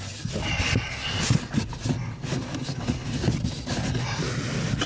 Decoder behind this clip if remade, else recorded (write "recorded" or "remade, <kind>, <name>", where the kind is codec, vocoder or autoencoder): recorded